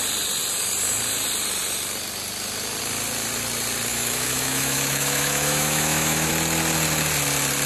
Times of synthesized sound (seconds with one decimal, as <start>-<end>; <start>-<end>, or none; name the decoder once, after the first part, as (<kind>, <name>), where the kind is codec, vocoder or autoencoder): 3.9-6.3 (autoencoder, DAC-VAE)